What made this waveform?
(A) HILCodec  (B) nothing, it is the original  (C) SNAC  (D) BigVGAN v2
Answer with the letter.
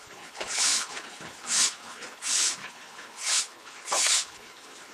A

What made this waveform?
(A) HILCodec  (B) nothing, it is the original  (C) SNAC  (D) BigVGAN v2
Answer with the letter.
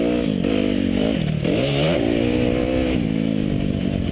B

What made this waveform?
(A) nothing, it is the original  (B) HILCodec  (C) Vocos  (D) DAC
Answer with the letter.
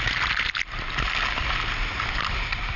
A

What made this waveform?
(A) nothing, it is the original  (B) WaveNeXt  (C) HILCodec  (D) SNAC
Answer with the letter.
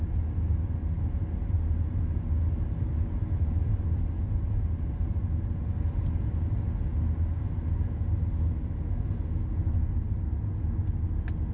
A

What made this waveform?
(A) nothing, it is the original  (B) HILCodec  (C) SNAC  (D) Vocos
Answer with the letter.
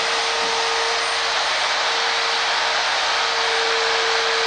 A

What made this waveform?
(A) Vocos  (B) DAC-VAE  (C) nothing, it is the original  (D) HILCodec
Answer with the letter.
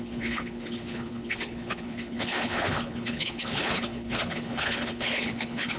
D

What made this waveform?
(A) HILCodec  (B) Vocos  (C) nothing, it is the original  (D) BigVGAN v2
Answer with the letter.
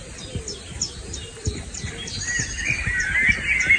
C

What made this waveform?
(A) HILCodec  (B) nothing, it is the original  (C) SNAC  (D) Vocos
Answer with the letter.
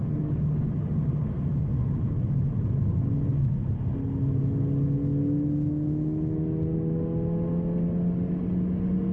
B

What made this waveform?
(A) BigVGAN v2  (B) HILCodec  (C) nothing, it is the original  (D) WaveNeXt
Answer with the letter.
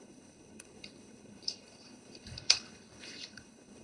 B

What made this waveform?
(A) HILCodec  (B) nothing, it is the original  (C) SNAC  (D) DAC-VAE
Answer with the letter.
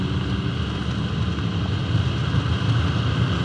B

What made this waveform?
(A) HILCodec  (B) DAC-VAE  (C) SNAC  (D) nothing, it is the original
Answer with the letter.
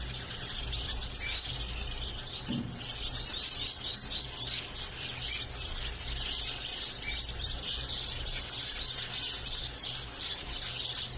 D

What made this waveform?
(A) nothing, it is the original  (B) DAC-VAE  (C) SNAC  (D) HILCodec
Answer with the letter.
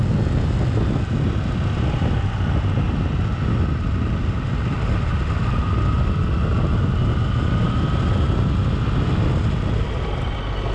A